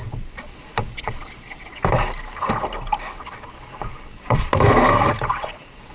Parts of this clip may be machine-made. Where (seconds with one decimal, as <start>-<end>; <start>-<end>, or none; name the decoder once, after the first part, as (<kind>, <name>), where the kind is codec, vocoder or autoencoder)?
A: 0.0-1.8 (vocoder, Vocos); 3.2-4.5; 5.3-5.9